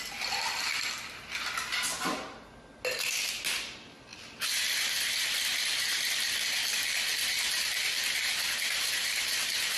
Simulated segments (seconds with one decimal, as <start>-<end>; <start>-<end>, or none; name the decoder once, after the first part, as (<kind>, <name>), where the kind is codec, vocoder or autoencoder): 4.1-6.1 (vocoder, BigVGAN v2)